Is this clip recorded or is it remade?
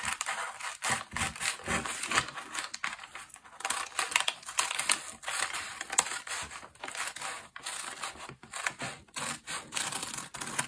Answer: recorded